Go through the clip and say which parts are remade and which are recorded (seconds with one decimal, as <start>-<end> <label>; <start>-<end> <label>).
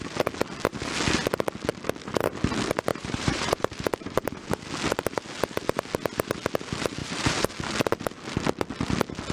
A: 0.0-2.9 recorded; 2.9-4.6 remade; 4.6-7.0 recorded; 7.0-7.5 remade; 7.5-9.3 recorded